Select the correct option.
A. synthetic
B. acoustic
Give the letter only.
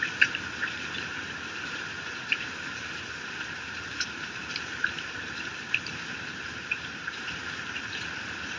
A